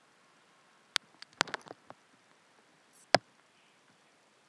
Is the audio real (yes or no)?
yes